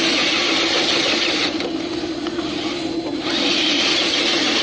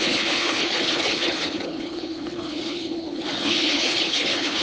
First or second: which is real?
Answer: first